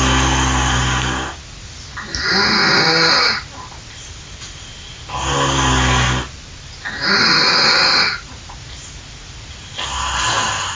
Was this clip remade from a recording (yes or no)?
no